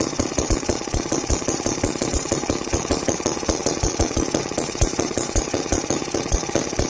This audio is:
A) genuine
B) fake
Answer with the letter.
B